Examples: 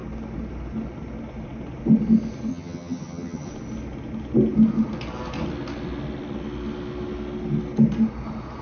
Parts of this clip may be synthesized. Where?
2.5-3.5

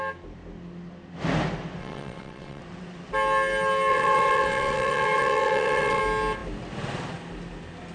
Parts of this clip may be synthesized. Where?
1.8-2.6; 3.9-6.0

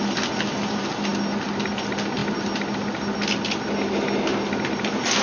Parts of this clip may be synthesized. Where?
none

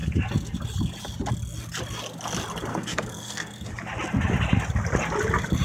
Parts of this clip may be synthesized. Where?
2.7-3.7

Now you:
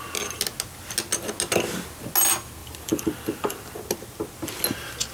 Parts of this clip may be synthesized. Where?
2.6-3.8

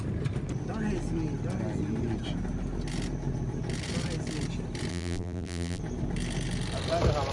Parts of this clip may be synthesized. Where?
4.9-5.8

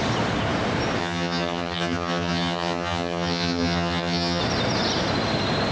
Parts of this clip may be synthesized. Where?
1.0-4.4

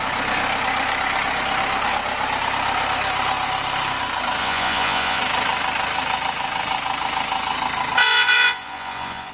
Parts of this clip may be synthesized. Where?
4.4-5.2; 8.0-9.3